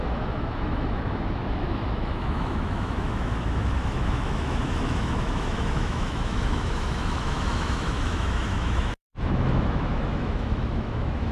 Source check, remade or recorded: remade